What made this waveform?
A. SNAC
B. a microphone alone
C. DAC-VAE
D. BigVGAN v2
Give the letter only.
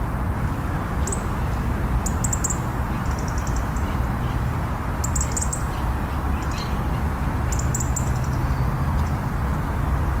B